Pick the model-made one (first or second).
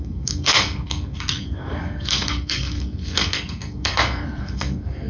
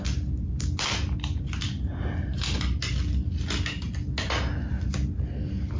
first